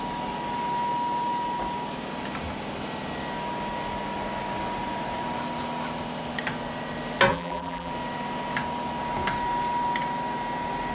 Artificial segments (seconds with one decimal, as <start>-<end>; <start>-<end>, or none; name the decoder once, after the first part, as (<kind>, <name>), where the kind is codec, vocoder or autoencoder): 7.3-7.9 (vocoder, BigVGAN v2)